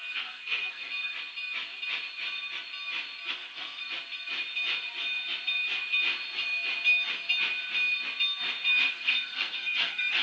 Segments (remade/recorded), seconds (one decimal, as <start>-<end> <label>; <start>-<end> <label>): 0.0-0.9 remade; 0.9-3.3 recorded; 3.3-3.8 remade; 3.8-8.9 recorded; 8.9-10.2 remade